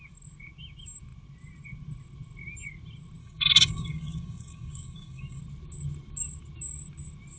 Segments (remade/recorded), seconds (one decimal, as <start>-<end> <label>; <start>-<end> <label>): 0.0-3.2 recorded; 3.2-5.4 remade; 5.4-7.4 recorded